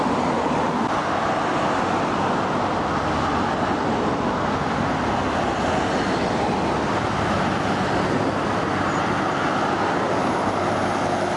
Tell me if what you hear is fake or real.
real